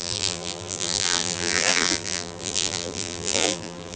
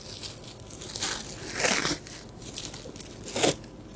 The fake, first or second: first